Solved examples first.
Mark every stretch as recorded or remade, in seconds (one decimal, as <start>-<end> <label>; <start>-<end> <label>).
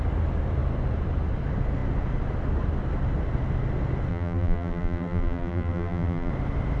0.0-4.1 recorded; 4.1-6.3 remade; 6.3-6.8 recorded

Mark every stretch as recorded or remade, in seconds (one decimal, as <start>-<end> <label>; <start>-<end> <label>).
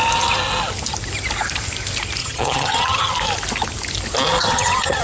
0.0-2.2 recorded; 2.2-3.1 remade; 3.1-4.4 recorded; 4.4-5.0 remade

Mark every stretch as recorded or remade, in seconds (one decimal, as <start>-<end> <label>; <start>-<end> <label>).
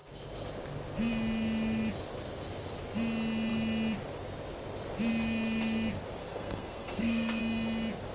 0.0-6.2 recorded; 6.2-7.4 remade; 7.4-8.1 recorded